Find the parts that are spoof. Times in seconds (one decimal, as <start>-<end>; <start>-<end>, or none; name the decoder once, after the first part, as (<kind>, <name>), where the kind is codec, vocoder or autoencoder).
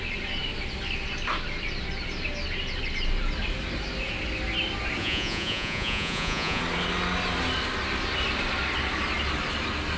5.0-6.6 (vocoder, Vocos)